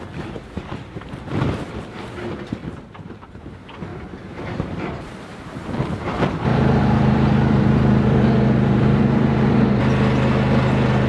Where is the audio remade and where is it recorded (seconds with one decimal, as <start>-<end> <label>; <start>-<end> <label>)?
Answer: 0.0-2.6 recorded; 2.6-3.4 remade; 3.4-3.9 recorded; 3.9-5.7 remade; 5.7-6.5 recorded; 6.5-9.8 remade; 9.8-11.1 recorded